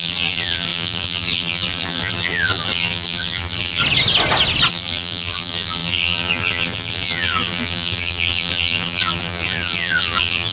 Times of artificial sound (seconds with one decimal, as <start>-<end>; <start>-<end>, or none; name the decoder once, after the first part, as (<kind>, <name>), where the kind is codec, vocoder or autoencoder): 0.0-3.8 (vocoder, BigVGAN v2); 4.7-10.5